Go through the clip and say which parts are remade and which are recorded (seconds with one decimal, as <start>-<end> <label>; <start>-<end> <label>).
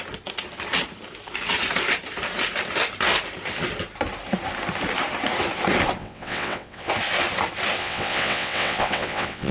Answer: 0.0-6.0 recorded; 6.0-6.9 remade; 6.9-7.8 recorded; 7.8-9.5 remade